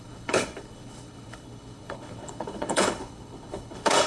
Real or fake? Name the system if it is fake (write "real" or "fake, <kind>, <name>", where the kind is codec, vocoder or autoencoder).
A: fake, codec, HILCodec